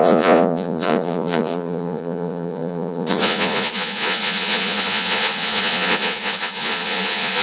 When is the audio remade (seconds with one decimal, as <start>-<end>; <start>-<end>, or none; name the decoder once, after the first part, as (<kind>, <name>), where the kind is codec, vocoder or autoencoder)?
0.0-7.4 (vocoder, Vocos)